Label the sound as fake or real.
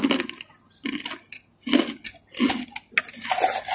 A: real